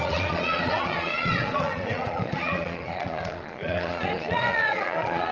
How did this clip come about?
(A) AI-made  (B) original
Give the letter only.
A